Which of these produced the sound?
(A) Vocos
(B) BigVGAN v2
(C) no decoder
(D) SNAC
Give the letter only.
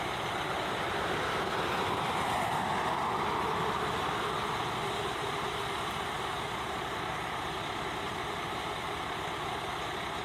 C